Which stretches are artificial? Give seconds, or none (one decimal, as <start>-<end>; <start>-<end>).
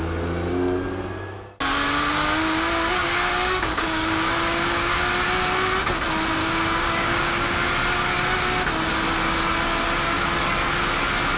3.0-5.0; 6.4-7.7